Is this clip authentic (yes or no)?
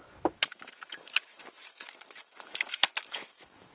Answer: no